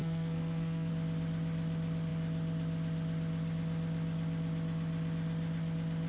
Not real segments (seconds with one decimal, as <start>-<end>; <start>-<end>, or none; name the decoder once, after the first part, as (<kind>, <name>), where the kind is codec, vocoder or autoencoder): 0.0-0.9 (codec, SNAC)

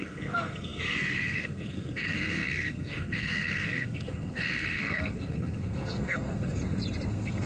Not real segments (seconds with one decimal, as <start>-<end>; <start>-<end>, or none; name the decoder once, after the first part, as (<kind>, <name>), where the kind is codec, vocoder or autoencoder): 0.0-6.6 (codec, SNAC); 7.1-7.5